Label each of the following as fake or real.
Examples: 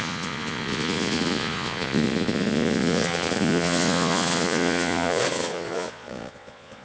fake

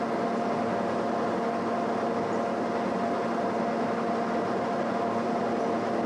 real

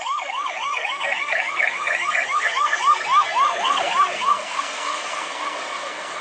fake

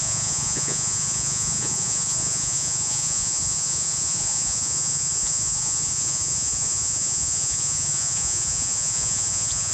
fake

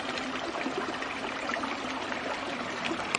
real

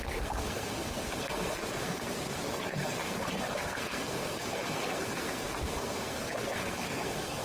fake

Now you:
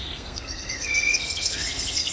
fake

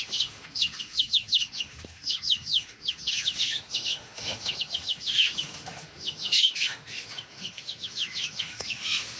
fake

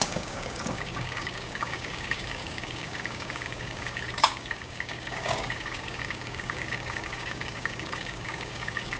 fake